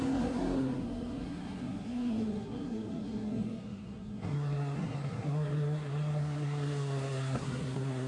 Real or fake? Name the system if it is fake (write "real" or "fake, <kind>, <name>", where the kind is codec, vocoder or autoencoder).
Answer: fake, codec, SNAC